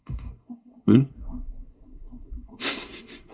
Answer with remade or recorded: remade